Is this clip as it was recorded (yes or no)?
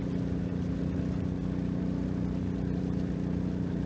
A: yes